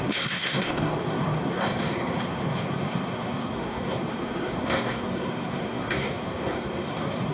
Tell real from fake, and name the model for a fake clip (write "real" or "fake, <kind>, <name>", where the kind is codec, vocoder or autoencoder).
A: fake, codec, SNAC